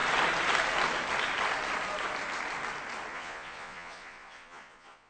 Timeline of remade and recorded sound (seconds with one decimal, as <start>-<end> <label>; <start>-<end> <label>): 0.0-3.1 recorded; 3.1-5.1 remade